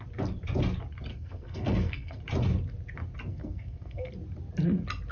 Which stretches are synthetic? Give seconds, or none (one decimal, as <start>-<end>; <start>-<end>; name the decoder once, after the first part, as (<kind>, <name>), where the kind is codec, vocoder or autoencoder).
1.1-2.2 (codec, SNAC); 3.3-4.1

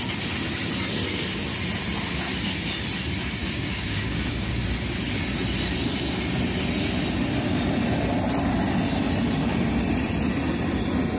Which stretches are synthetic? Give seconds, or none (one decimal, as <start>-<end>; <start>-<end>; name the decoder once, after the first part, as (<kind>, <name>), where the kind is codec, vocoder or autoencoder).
3.4-4.5 (codec, DAC)

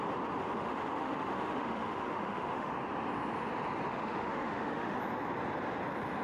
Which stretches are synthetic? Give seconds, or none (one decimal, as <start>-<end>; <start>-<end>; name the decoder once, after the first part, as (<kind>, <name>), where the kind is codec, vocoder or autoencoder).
0.4-2.7 (autoencoder, DAC-VAE); 3.9-5.0

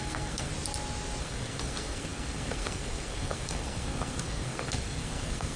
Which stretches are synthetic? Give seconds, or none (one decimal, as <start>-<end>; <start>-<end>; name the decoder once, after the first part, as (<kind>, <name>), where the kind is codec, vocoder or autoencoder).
0.0-0.5 (codec, SNAC); 1.2-5.6

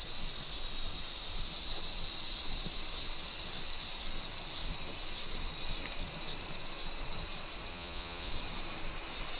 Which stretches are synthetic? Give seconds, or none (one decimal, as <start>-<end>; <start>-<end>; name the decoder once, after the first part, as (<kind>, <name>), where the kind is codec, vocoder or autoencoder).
7.7-8.3 (vocoder, Vocos)

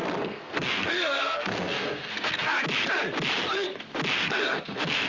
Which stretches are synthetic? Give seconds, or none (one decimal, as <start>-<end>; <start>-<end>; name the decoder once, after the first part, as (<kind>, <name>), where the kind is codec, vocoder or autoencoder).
0.0-2.5 (codec, SNAC); 4.2-5.1

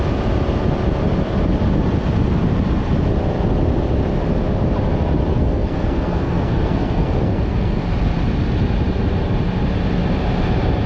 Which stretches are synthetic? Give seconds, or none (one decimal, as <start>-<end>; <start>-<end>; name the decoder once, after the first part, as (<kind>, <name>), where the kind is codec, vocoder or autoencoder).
5.3-7.8 (codec, SNAC)